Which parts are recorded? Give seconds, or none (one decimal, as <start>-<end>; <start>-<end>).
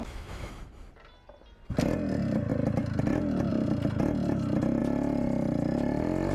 0.5-6.3